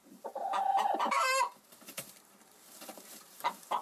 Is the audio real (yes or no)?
no